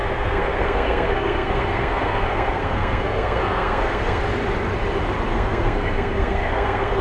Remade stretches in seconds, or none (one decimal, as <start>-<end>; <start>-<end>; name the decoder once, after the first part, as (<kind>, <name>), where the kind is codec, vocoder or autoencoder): 0.0-4.2 (codec, SNAC); 5.3-7.0

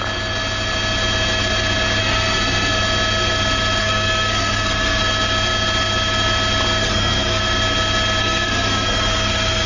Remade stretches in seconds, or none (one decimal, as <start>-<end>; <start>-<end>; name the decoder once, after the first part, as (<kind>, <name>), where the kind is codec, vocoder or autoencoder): 2.0-2.7 (codec, SNAC); 3.8-5.0; 6.8-7.4; 8.2-9.7

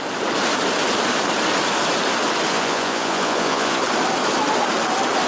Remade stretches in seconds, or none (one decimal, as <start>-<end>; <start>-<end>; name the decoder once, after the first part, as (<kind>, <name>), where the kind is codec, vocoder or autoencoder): 2.5-3.8 (vocoder, Vocos)

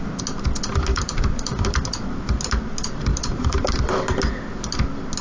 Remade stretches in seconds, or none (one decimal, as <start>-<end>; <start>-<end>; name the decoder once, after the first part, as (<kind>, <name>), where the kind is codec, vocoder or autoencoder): 0.9-1.8 (vocoder, BigVGAN v2); 3.1-3.9

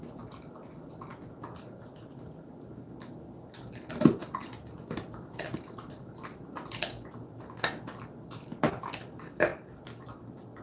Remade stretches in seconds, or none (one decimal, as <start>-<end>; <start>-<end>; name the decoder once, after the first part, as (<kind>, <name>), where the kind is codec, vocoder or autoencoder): none

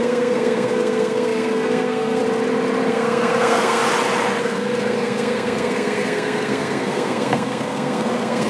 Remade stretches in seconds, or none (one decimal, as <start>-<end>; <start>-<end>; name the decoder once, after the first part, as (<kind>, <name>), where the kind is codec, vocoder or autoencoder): 0.0-2.2 (codec, SNAC); 2.9-3.8; 4.4-8.5

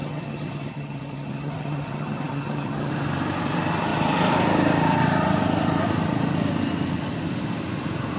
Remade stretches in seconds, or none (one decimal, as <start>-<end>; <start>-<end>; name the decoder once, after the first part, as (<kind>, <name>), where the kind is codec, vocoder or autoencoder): 0.0-2.9 (vocoder, HiFi-GAN)